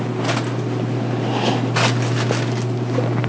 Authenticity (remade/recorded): recorded